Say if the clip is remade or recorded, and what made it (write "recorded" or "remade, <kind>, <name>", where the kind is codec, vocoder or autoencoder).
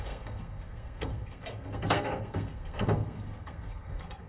remade, codec, SNAC